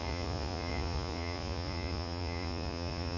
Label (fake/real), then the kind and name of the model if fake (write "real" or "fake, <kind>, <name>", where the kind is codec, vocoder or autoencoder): fake, vocoder, Vocos